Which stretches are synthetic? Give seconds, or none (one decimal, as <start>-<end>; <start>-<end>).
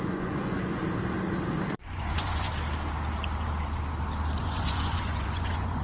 0.0-0.8; 1.7-2.5; 4.4-5.8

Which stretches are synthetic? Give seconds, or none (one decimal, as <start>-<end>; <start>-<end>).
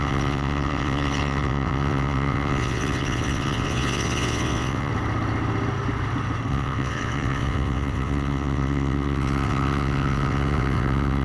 0.0-4.9; 6.5-11.2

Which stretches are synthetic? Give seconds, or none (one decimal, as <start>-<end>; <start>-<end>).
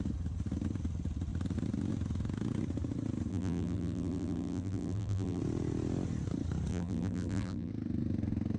3.3-5.4; 6.7-7.7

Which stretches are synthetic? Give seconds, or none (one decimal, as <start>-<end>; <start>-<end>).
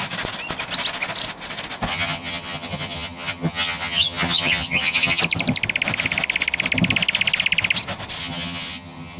1.9-5.2; 8.2-9.2